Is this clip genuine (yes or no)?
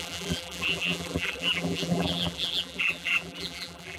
no